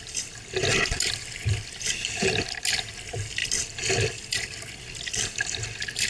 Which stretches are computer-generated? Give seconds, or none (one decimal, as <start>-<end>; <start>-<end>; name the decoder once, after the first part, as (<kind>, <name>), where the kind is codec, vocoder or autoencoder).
none